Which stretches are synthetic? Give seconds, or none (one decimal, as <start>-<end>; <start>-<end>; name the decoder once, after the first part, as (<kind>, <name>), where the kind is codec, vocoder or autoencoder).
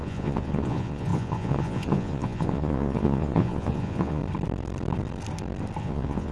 0.0-4.2 (vocoder, Vocos); 5.8-6.3